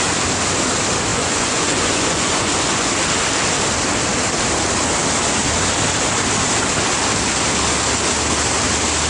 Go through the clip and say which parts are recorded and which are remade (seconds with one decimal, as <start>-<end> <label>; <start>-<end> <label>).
0.0-1.1 recorded; 1.1-2.9 remade; 2.9-9.1 recorded